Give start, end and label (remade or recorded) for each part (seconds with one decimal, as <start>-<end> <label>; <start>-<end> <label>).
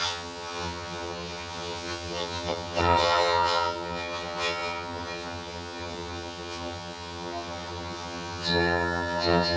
0.0-9.6 remade